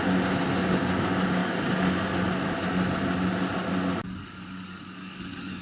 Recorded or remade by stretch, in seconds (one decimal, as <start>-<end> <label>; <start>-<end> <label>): 0.0-1.4 recorded; 1.4-1.9 remade; 1.9-4.0 recorded; 4.0-5.6 remade